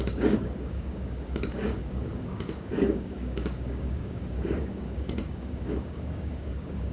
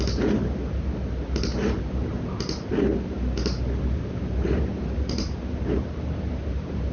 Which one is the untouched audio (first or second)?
second